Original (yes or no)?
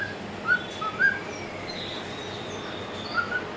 yes